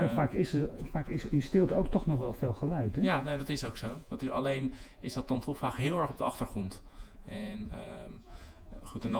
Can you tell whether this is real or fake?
fake